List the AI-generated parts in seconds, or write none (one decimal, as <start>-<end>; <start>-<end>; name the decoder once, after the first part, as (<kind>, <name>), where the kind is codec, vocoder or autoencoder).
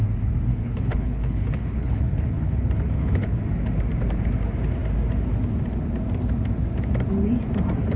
0.5-3.4 (codec, HILCodec)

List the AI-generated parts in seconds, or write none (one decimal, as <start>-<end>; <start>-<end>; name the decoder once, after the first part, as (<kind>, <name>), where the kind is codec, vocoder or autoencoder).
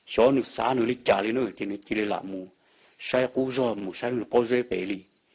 3.8-4.7 (autoencoder, DAC-VAE)